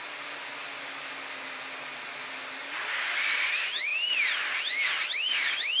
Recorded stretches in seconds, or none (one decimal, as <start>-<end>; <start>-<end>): 0.0-5.8